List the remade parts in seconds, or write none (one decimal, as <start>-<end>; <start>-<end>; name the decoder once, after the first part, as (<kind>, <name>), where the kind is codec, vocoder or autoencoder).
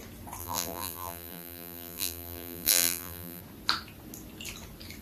0.4-3.4 (vocoder, BigVGAN v2)